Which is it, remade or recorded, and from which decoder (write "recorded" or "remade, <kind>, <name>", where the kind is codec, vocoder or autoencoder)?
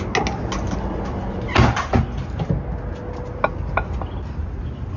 recorded